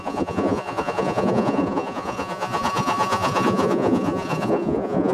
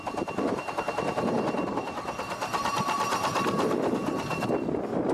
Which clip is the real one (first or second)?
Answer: second